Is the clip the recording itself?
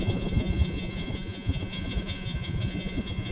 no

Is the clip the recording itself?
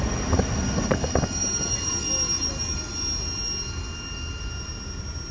yes